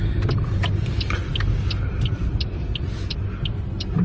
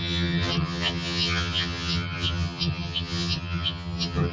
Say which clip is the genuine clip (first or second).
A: first